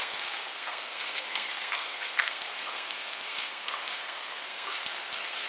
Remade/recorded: remade